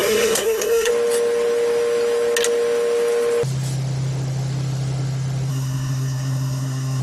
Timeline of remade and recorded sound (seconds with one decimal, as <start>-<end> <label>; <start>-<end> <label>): 0.0-0.9 remade; 0.9-5.5 recorded; 5.5-7.0 remade

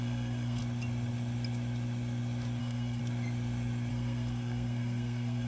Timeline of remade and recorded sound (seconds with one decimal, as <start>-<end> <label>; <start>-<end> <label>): 0.0-0.6 remade; 0.6-2.6 recorded; 2.6-3.0 remade; 3.0-3.9 recorded; 3.9-5.5 remade

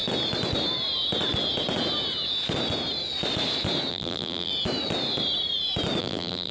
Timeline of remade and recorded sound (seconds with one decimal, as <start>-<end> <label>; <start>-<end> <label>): 0.0-3.9 recorded; 3.9-4.5 remade; 4.5-6.0 recorded; 6.0-6.5 remade

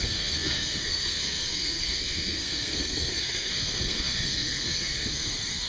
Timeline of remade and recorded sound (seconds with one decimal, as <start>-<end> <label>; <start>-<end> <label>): 0.0-5.7 remade

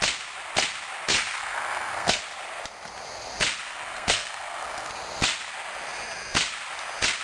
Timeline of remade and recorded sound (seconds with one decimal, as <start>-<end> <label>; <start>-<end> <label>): 0.0-1.4 recorded; 1.4-2.2 remade; 2.2-3.7 recorded; 3.7-4.9 remade; 4.9-7.2 recorded

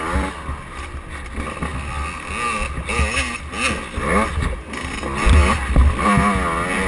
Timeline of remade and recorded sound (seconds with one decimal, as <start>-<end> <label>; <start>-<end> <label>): 0.0-6.9 recorded